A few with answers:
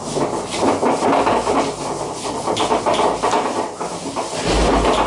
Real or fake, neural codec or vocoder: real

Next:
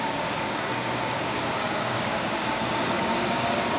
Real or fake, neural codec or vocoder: fake, codec, DAC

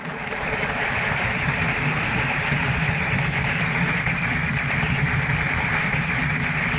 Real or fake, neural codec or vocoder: fake, vocoder, BigVGAN v2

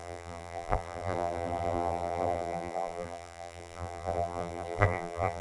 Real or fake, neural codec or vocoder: fake, vocoder, BigVGAN v2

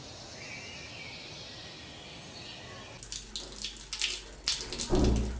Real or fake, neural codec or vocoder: real